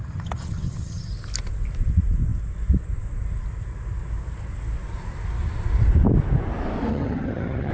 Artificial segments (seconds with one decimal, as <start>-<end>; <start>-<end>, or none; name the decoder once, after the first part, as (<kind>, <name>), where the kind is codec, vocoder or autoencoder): 0.0-1.1 (vocoder, HiFi-GAN); 6.9-7.7